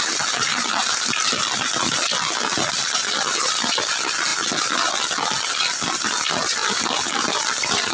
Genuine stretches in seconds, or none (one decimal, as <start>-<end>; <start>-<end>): 0.0-0.5; 1.8-4.3; 5.0-6.6